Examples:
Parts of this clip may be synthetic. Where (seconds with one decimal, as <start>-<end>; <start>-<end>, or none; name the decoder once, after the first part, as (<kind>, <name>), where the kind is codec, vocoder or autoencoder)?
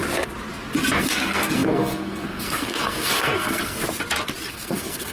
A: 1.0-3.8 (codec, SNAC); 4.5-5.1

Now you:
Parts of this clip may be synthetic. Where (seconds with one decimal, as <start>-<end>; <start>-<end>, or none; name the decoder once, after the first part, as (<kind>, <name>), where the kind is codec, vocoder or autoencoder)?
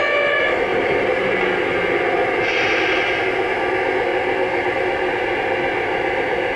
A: 0.7-1.5 (vocoder, BigVGAN v2); 4.1-5.3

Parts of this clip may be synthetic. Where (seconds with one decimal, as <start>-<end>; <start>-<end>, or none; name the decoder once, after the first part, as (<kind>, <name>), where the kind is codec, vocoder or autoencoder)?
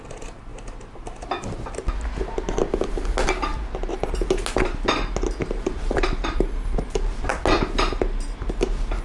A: 5.4-7.3 (vocoder, BigVGAN v2)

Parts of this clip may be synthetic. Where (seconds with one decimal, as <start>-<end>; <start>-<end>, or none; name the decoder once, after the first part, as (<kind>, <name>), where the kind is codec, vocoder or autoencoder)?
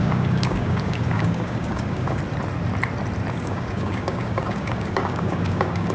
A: 0.0-2.2 (codec, DAC); 3.3-5.9